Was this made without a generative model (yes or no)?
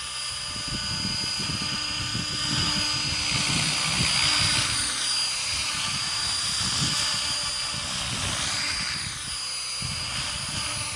yes